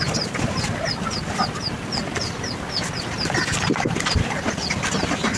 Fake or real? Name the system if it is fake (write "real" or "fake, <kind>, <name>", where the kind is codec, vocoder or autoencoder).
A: real